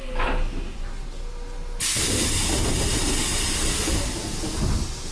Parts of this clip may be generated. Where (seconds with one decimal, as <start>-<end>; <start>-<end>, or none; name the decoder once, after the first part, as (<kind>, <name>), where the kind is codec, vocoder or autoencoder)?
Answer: 1.9-2.7 (vocoder, BigVGAN v2)